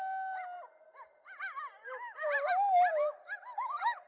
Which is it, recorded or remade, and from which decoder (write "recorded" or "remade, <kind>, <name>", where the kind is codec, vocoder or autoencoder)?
recorded